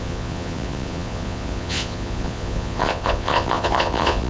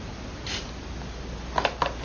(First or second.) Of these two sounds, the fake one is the first